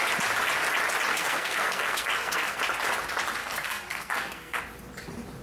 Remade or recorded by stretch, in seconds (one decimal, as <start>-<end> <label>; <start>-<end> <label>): 0.0-1.1 recorded; 1.1-2.6 remade; 2.6-3.4 recorded; 3.4-4.6 remade; 4.6-5.4 recorded